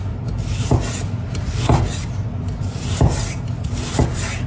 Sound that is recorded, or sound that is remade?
recorded